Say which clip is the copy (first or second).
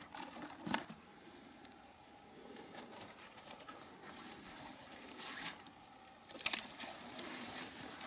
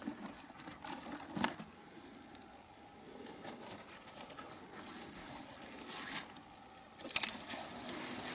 first